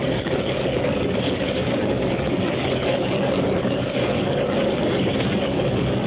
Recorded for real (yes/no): no